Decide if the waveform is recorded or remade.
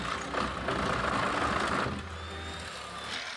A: recorded